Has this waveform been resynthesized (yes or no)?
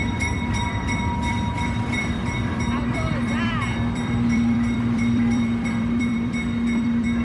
yes